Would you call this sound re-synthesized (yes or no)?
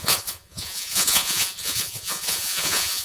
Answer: yes